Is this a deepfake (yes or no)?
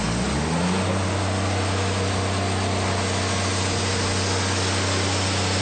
no